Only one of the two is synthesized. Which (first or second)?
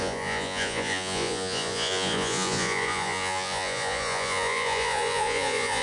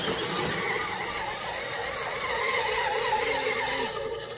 first